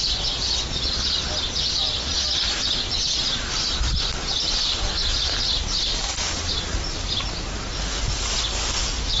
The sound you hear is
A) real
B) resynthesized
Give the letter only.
A